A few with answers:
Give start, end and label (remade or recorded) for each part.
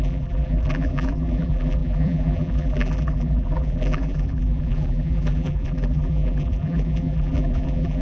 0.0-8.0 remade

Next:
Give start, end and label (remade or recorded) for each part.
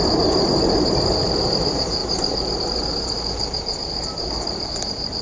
0.0-5.2 recorded